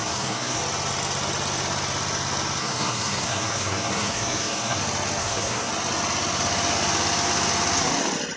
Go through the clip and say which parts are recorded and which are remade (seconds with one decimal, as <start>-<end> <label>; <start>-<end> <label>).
0.0-0.6 remade; 0.6-2.6 recorded; 2.6-4.8 remade; 4.8-5.2 recorded; 5.2-5.7 remade; 5.7-8.4 recorded